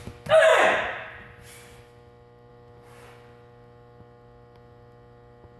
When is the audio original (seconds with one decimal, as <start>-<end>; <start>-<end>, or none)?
0.0-5.6